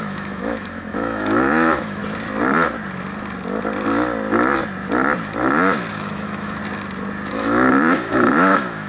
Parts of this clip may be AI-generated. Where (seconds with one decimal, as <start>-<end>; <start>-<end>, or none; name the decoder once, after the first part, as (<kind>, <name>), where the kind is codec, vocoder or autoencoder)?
0.0-2.0 (autoencoder, DAC-VAE); 5.9-6.6; 7.3-8.9